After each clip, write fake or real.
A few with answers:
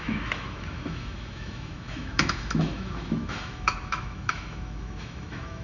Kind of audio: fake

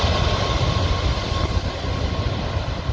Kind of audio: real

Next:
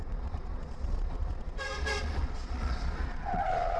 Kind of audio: fake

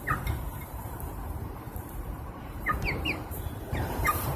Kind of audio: fake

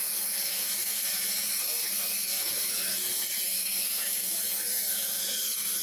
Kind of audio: fake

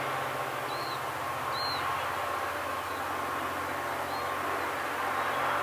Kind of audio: real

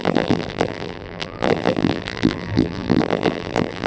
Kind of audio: fake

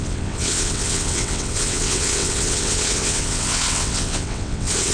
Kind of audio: fake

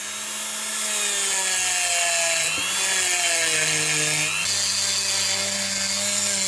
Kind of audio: real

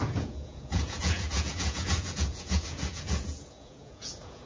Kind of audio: fake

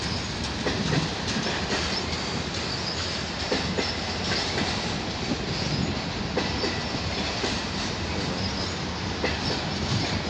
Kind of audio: real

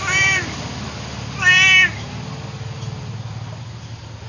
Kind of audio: real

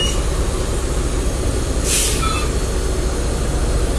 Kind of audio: real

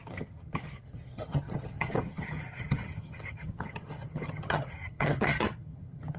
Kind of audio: fake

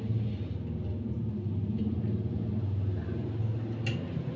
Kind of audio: real